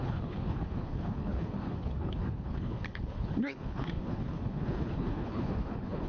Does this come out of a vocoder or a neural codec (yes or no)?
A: yes